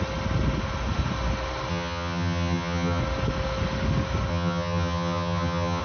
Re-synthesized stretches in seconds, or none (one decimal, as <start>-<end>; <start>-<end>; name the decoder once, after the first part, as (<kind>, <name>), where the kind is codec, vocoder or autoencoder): 1.7-3.0 (vocoder, HiFi-GAN); 4.3-5.8